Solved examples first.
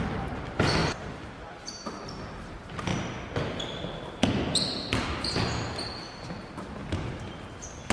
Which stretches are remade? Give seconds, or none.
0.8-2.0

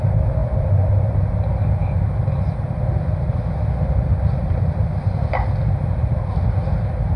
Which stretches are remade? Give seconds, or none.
0.4-1.3; 4.4-5.3

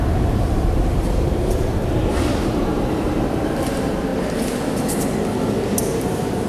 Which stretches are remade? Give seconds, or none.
0.0-1.8; 2.3-4.1; 5.8-6.5

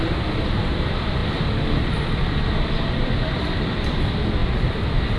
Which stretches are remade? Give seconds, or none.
1.2-4.0; 4.4-5.2

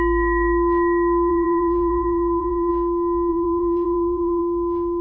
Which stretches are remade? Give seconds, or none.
1.3-2.7; 3.3-4.4